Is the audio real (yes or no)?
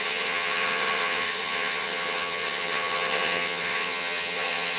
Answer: no